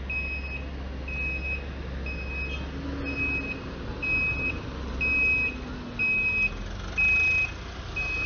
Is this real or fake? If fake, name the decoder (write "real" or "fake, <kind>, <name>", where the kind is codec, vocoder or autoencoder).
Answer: real